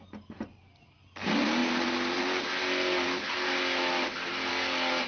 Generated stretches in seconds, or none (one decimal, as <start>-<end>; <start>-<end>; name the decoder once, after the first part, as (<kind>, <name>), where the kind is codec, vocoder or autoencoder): none